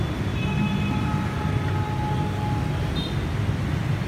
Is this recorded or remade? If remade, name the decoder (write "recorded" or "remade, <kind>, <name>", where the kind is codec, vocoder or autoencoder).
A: recorded